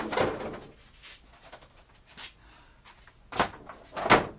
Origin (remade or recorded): recorded